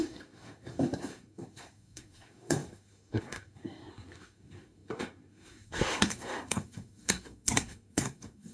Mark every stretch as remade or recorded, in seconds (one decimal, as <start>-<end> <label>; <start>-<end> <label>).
0.0-8.5 remade